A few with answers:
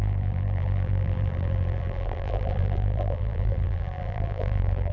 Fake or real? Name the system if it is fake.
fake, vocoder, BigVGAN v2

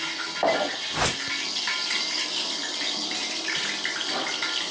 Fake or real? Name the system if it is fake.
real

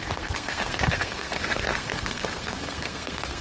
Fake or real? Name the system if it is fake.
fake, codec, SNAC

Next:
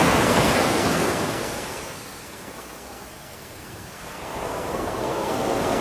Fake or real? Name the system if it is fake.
fake, codec, SNAC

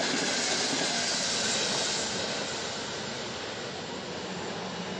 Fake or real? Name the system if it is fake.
real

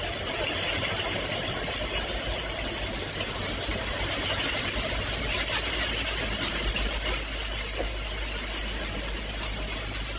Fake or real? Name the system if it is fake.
real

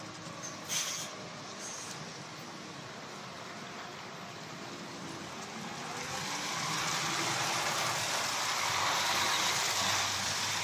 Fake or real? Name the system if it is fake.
real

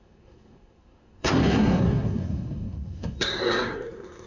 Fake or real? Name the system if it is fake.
fake, codec, SNAC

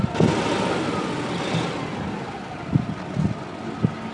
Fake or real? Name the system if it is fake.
real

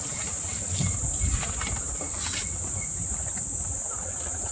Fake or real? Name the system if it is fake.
real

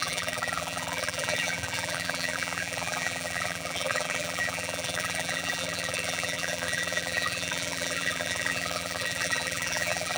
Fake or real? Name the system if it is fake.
fake, vocoder, BigVGAN v2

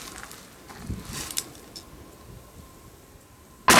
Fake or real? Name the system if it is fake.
real